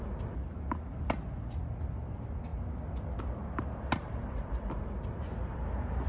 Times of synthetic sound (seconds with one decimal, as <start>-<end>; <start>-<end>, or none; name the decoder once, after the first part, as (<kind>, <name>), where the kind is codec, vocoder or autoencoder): 4.0-4.8 (vocoder, BigVGAN v2)